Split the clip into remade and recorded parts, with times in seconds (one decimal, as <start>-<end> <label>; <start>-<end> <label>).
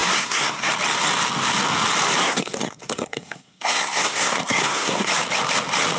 0.0-0.7 remade; 0.7-2.2 recorded; 2.2-5.1 remade; 5.1-6.0 recorded